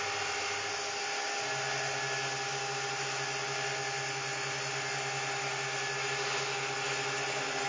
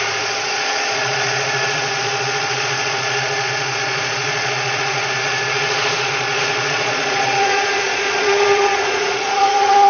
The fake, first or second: second